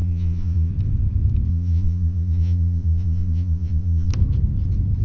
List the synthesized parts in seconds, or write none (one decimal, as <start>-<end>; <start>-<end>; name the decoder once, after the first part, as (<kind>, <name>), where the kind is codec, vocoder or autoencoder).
0.0-0.7 (vocoder, Vocos); 1.5-4.1